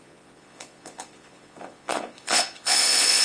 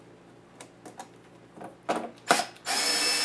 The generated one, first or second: first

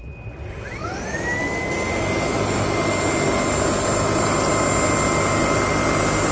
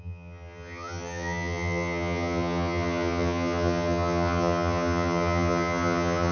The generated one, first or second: second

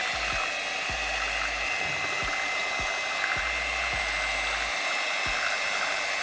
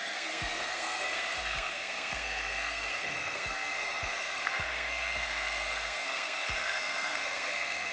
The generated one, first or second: second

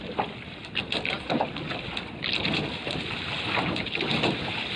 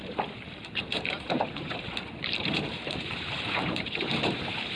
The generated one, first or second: second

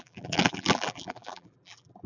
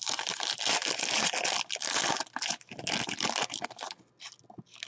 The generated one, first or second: first